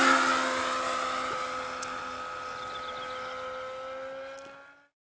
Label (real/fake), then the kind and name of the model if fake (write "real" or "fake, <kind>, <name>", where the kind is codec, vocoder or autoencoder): real